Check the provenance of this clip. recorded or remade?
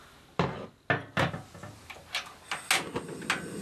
recorded